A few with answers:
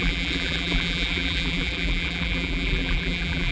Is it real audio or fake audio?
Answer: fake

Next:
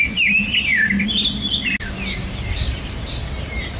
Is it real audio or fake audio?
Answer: real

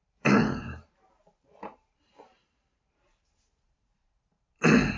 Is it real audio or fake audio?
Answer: fake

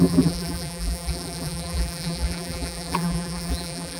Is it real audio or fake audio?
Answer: fake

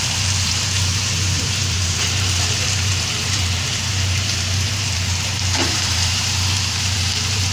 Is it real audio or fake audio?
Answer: fake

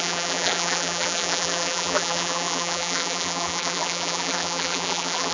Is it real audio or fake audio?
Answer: fake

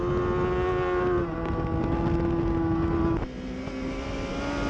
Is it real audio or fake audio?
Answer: real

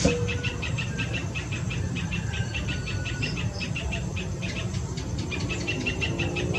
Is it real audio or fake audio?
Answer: fake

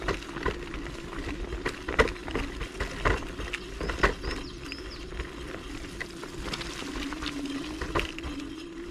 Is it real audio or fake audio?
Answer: real